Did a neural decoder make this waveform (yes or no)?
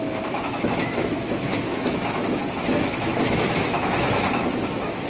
yes